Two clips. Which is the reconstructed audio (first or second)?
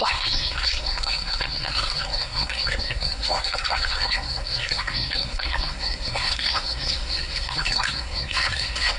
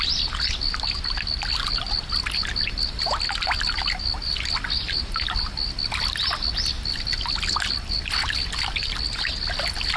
first